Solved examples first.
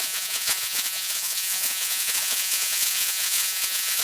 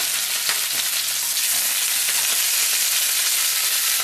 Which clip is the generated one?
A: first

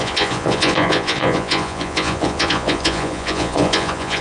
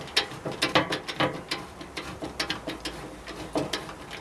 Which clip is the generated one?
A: first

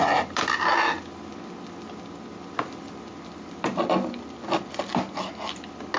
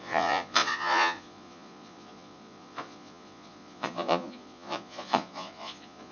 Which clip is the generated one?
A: second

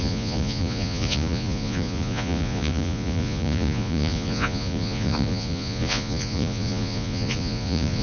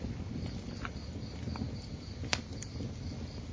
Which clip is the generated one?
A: first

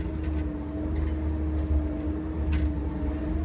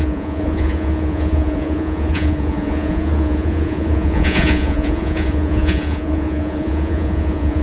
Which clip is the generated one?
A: second